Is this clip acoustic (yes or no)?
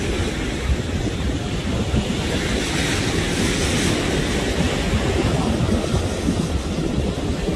yes